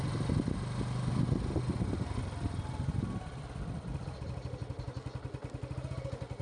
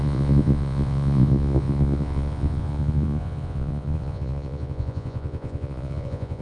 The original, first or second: first